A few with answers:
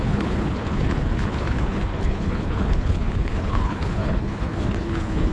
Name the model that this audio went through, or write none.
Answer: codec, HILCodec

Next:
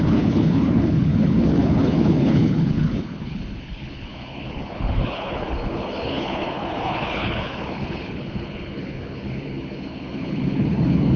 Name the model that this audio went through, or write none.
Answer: codec, HILCodec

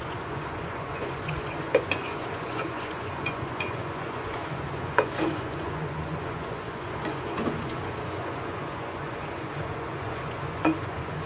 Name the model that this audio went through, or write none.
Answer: vocoder, Vocos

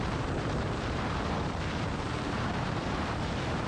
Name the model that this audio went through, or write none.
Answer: vocoder, BigVGAN v2